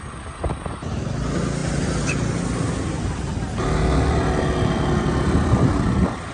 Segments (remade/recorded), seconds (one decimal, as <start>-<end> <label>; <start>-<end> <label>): 0.0-6.3 recorded